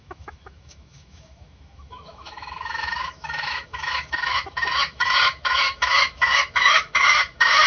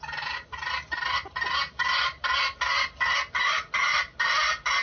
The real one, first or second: second